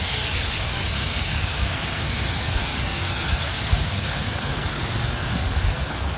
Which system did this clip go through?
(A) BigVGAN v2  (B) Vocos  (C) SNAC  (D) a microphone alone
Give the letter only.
C